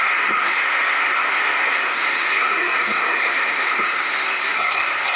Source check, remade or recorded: remade